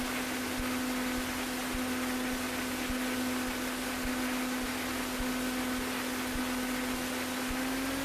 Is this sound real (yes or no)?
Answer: yes